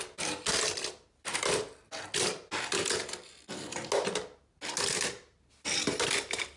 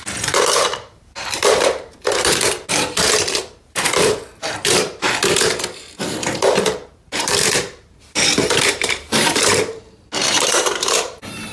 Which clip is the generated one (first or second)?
second